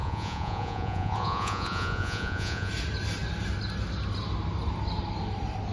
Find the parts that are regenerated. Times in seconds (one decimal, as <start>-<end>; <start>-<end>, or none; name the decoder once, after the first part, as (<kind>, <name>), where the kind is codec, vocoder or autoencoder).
0.0-2.7 (vocoder, Vocos)